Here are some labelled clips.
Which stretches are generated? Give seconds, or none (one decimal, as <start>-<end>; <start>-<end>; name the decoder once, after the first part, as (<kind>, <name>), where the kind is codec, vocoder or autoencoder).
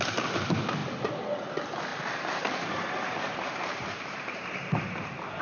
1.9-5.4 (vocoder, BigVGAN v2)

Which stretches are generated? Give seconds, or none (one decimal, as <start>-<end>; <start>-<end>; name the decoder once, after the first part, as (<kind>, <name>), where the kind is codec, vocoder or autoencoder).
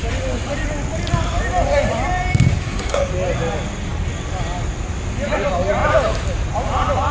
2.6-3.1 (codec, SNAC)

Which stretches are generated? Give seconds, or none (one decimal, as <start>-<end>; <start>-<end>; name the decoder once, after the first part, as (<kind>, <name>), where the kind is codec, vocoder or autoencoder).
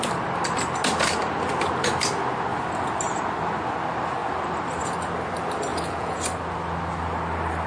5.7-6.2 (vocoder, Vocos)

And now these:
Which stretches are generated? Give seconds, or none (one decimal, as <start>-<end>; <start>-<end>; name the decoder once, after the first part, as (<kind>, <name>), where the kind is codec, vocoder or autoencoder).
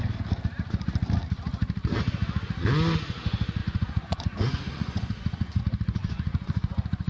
3.6-5.6 (vocoder, Vocos); 6.0-7.1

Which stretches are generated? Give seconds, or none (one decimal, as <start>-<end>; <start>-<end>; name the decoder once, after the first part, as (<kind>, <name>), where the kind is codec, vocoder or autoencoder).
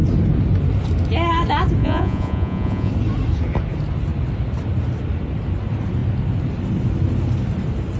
1.8-2.9 (vocoder, Vocos)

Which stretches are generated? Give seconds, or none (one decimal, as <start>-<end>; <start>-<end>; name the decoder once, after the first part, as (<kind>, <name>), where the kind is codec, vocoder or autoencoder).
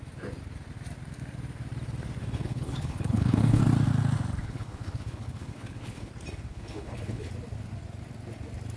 2.2-3.6 (codec, HILCodec); 4.4-6.1; 6.5-7.3